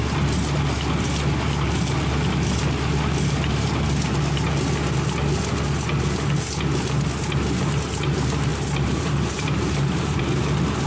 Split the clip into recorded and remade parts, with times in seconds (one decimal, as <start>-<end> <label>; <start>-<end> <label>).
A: 0.0-8.5 recorded; 8.5-10.2 remade; 10.2-10.9 recorded

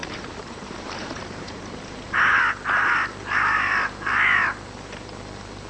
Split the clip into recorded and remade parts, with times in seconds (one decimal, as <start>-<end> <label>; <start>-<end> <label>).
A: 0.0-2.4 remade; 2.4-5.7 recorded

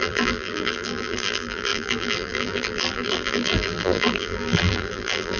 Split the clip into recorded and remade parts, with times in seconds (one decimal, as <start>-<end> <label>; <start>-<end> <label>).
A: 0.0-5.4 remade

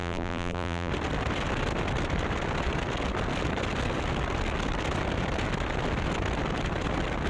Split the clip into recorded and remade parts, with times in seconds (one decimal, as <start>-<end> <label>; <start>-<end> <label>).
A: 0.0-0.9 remade; 0.9-7.3 recorded

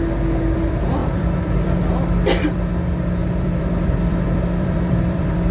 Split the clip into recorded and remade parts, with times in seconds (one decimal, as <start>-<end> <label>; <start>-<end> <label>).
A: 0.0-1.0 recorded; 1.0-2.7 remade; 2.7-3.2 recorded; 3.2-5.5 remade

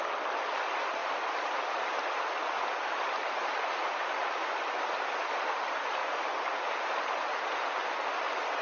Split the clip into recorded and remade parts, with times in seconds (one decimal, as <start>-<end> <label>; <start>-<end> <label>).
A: 0.0-1.0 recorded; 1.0-2.7 remade; 2.7-8.6 recorded

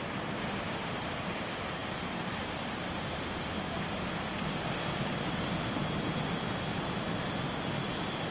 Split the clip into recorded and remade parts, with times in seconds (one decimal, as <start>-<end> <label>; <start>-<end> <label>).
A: 0.0-8.3 remade

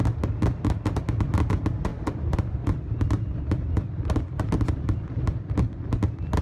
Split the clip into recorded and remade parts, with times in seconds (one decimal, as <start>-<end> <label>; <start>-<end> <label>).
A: 0.0-1.9 recorded; 1.9-5.7 remade; 5.7-6.4 recorded